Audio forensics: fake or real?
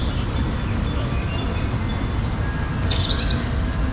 real